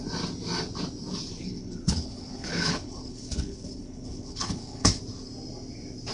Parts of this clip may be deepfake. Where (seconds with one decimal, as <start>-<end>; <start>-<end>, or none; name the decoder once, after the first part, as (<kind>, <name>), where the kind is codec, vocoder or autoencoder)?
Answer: 1.3-5.0 (codec, HILCodec)